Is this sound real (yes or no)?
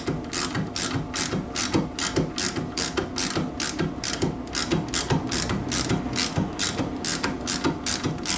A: yes